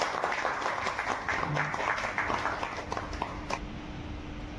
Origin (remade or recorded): recorded